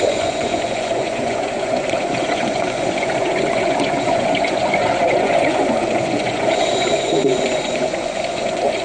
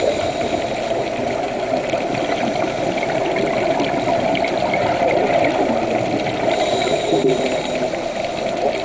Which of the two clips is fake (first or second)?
first